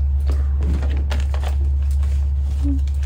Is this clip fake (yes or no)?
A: no